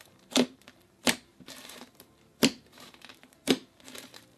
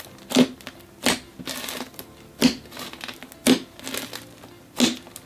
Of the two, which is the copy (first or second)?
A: first